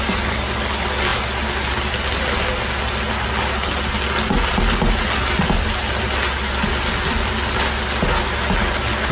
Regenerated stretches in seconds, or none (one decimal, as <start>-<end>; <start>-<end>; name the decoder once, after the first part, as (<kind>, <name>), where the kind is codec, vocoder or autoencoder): none